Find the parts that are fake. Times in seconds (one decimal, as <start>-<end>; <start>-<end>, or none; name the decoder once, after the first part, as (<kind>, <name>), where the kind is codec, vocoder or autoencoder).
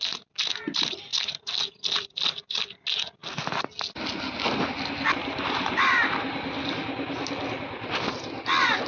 none